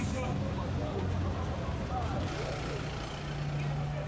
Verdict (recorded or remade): recorded